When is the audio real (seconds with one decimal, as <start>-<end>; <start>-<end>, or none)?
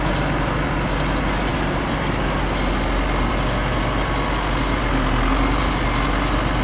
0.0-6.6